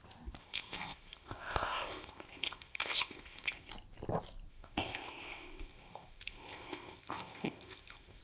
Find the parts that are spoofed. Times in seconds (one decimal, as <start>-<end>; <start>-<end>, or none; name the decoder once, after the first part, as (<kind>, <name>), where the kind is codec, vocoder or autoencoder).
0.4-3.7 (codec, ZipCodec); 4.5-8.2